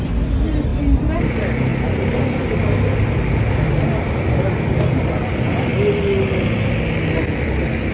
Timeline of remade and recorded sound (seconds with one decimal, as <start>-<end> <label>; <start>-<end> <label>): 0.0-7.9 recorded